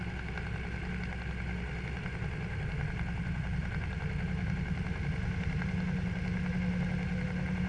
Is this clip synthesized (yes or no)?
no